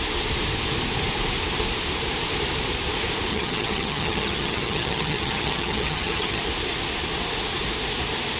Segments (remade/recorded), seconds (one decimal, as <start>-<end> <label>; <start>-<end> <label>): 0.0-3.3 recorded; 3.3-6.4 remade; 6.4-8.4 recorded